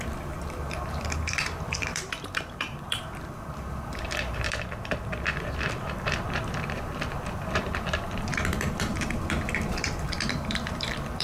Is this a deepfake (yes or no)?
yes